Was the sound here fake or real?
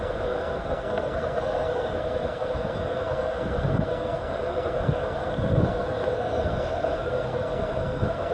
fake